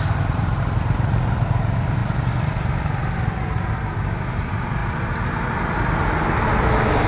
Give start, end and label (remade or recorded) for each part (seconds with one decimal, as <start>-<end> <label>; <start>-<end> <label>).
0.0-7.1 recorded